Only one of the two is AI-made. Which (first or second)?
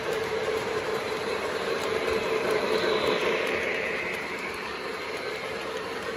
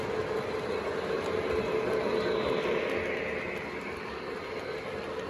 first